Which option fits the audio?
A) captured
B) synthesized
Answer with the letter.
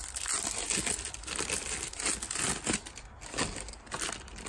A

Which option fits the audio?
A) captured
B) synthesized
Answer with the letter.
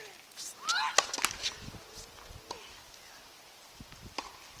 A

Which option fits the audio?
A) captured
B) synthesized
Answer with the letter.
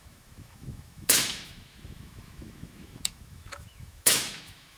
B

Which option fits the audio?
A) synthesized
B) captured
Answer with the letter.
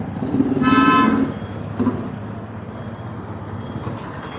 B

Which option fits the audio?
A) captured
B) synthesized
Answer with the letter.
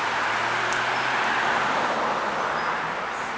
A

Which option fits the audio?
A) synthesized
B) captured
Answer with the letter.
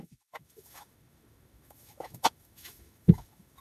A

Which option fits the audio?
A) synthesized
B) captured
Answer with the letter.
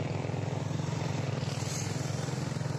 B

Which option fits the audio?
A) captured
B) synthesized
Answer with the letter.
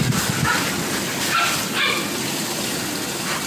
A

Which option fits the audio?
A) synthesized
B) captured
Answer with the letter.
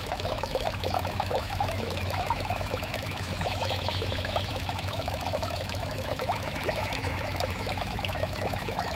A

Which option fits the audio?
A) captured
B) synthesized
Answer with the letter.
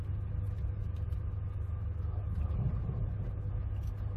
A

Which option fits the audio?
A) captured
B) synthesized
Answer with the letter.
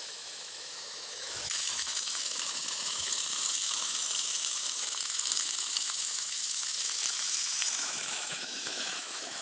B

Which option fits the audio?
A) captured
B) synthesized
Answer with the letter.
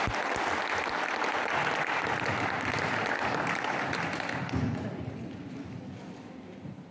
A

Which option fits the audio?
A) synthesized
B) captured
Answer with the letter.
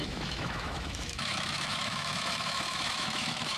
A